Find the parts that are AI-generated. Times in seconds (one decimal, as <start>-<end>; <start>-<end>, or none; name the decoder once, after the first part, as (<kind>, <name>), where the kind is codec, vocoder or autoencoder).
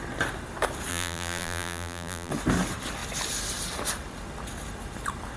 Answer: 0.9-2.3 (vocoder, BigVGAN v2)